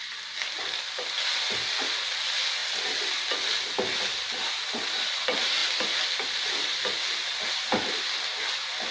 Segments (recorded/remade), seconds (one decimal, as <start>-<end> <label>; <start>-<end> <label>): 0.0-8.9 recorded